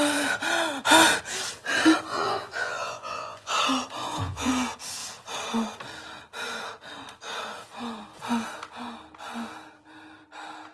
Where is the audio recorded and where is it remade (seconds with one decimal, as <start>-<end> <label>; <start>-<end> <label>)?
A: 0.0-2.1 recorded; 2.1-3.5 remade; 3.5-4.0 recorded; 4.0-4.5 remade; 4.5-10.7 recorded